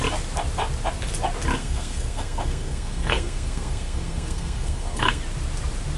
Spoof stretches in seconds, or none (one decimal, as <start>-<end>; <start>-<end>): 1.6-5.2